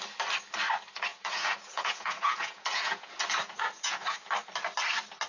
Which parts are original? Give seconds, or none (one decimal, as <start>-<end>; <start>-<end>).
0.0-1.1; 4.3-5.3